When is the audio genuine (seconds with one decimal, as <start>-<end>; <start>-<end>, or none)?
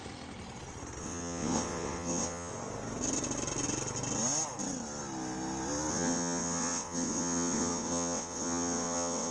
0.0-1.0; 2.5-5.9